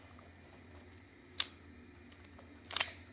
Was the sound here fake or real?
real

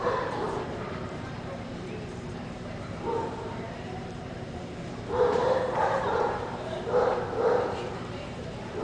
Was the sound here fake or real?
fake